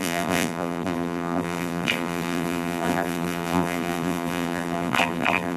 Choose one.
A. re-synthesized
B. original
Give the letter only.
A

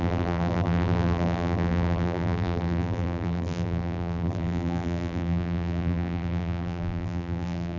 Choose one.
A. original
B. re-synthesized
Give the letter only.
B